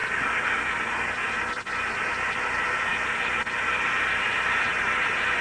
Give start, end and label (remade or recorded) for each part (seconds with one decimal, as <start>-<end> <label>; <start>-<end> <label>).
0.0-5.4 recorded